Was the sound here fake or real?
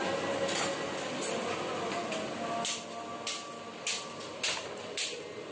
real